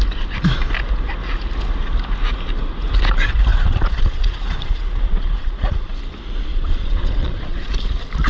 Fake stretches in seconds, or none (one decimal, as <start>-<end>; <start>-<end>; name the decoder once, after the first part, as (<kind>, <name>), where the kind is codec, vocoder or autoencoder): 3.5-5.9 (vocoder, Vocos); 6.5-7.7